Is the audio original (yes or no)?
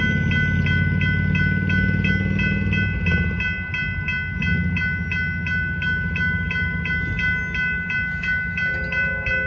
yes